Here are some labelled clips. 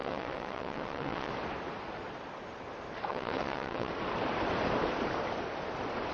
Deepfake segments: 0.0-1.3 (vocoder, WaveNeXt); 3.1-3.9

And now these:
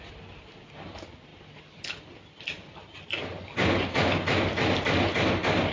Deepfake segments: none